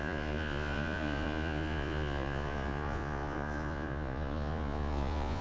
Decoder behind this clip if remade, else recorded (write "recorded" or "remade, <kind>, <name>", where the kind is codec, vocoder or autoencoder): remade, vocoder, Vocos